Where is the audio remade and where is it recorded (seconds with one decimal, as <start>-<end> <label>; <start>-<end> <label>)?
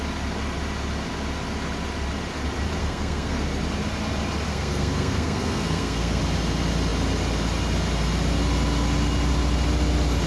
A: 0.0-2.8 recorded; 2.8-3.4 remade; 3.4-4.5 recorded; 4.5-6.2 remade; 6.2-10.3 recorded